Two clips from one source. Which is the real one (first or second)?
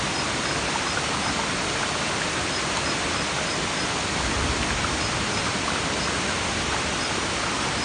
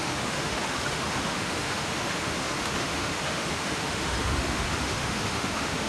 first